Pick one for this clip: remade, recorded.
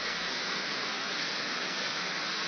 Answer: remade